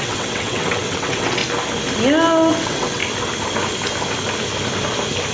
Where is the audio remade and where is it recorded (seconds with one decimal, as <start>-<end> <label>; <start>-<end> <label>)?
0.0-1.4 remade; 1.4-2.5 recorded; 2.5-3.0 remade; 3.0-5.3 recorded